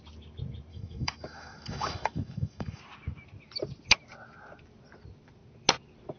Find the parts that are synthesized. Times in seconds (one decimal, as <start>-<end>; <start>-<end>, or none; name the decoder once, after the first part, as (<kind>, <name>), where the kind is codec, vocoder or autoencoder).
0.7-2.8 (autoencoder, DAC-VAE)